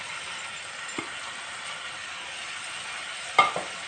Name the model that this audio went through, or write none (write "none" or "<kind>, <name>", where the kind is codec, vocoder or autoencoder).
none